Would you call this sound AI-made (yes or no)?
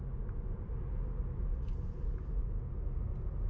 no